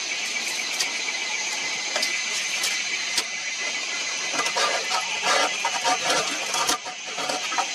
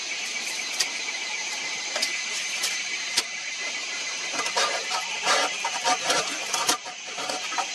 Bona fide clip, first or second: first